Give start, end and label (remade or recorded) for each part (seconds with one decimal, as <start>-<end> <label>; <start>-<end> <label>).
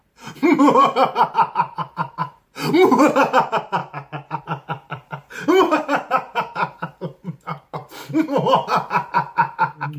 0.0-3.8 remade; 3.8-4.4 recorded; 4.4-7.8 remade; 7.8-10.0 recorded